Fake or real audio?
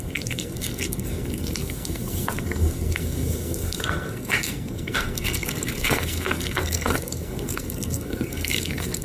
fake